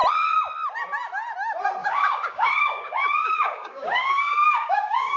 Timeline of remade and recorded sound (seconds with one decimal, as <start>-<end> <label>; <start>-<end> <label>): 0.0-1.8 recorded; 1.8-5.2 remade